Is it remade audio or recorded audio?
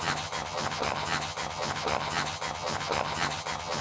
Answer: remade